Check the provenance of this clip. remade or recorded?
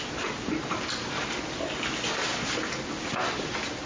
recorded